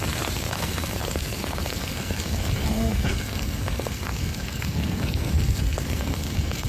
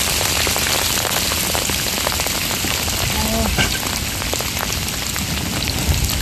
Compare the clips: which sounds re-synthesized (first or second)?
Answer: first